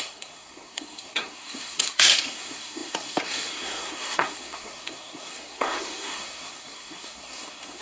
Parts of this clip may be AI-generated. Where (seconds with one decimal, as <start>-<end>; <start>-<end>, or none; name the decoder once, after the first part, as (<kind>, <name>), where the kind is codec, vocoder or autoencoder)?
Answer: 0.0-7.8 (codec, SNAC)

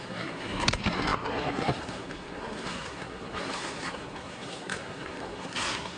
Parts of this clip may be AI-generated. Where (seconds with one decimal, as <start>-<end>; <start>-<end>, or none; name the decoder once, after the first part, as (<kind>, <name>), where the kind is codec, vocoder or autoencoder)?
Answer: 0.0-6.0 (codec, SNAC)

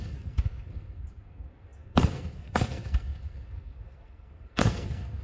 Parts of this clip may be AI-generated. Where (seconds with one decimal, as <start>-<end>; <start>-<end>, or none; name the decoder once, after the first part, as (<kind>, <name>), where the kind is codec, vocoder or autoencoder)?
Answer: 0.0-5.2 (codec, SNAC)

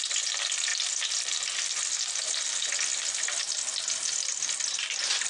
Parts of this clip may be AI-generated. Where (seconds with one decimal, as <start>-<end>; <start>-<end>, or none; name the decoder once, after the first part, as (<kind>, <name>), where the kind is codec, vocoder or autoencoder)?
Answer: none

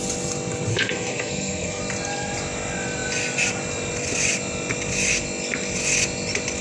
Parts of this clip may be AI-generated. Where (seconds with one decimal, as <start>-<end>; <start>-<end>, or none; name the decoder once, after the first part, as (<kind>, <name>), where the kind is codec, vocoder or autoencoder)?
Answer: 0.7-1.8 (codec, SNAC)